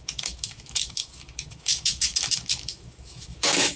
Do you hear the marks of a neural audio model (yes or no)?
yes